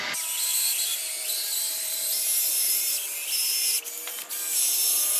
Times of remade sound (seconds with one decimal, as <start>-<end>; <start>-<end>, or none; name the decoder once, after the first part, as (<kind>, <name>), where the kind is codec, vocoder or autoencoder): none